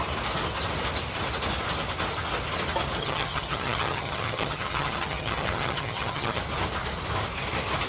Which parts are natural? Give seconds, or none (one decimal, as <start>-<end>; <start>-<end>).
0.0-3.0; 6.4-7.9